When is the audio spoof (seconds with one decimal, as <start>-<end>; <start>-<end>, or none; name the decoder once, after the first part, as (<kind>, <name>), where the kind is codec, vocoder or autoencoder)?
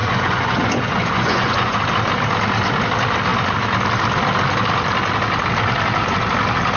0.0-1.8 (vocoder, Vocos)